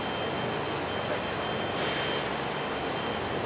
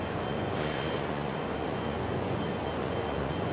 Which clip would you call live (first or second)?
first